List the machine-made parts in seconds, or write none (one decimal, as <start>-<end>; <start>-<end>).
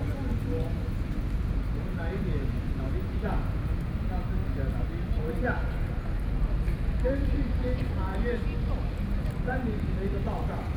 none